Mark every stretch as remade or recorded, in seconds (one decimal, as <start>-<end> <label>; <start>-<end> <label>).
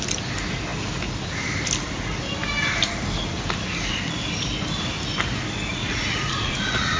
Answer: 0.0-5.7 recorded; 5.7-7.0 remade